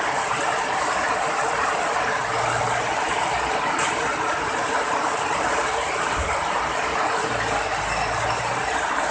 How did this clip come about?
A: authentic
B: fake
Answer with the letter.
A